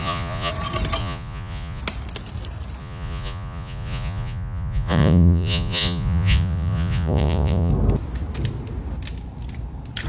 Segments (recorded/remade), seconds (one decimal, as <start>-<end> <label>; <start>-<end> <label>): 0.0-0.5 remade; 0.5-1.0 recorded; 1.0-1.8 remade; 1.8-2.8 recorded; 2.8-7.7 remade; 7.7-10.1 recorded